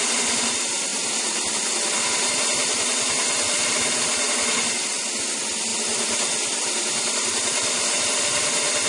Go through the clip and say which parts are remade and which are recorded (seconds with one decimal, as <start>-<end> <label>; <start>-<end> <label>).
0.0-8.9 recorded